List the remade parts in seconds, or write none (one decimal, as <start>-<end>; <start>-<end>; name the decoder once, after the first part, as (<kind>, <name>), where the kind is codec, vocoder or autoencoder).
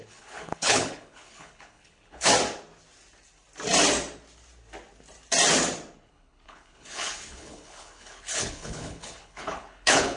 0.0-2.3 (codec, HILCodec); 6.1-10.2